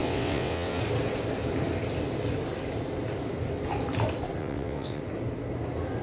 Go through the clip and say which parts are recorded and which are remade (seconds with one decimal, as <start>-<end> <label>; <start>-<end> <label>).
0.0-0.8 remade; 0.8-4.4 recorded; 4.4-5.0 remade; 5.0-6.0 recorded